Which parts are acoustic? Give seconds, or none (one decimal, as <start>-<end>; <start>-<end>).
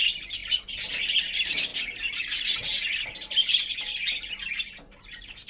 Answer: 0.0-5.5